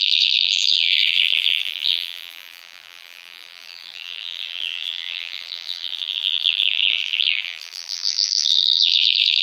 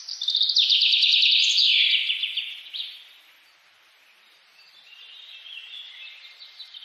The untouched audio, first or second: second